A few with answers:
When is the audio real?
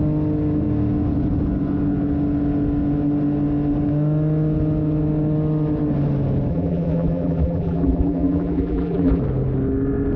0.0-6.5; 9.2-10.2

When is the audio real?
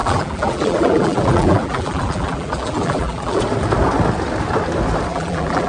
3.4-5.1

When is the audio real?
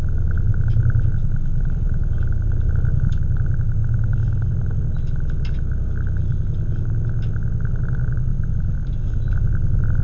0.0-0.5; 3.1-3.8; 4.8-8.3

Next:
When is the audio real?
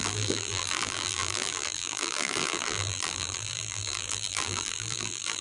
none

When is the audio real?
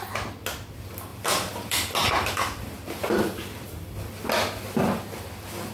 0.0-1.1; 3.8-5.7